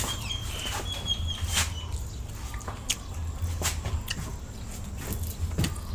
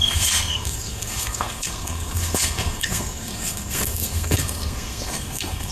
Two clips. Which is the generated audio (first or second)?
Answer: second